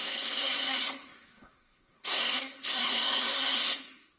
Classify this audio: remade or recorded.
remade